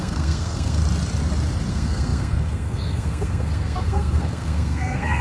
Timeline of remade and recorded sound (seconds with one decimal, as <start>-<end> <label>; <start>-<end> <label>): 0.0-0.8 remade; 0.8-1.7 recorded; 1.7-5.2 remade